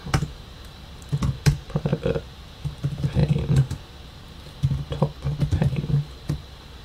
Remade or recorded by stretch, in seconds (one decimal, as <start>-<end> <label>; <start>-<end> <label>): 0.0-3.2 remade; 3.2-6.3 recorded; 6.3-6.8 remade